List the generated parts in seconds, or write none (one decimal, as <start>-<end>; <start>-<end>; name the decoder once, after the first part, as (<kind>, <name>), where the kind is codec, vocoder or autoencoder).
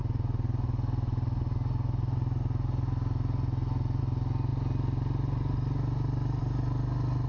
none